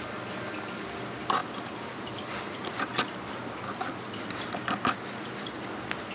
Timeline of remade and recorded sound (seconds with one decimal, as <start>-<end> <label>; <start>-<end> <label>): 0.0-6.1 recorded